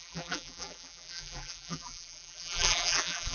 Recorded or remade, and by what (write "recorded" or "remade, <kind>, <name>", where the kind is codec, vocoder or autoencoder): remade, vocoder, BigVGAN v2